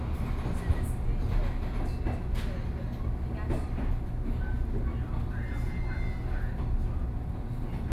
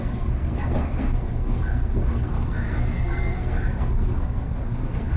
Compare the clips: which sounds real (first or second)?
first